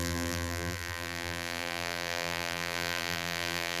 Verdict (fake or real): fake